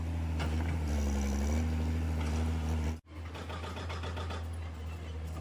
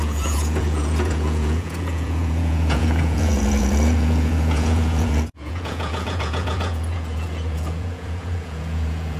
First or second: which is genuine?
first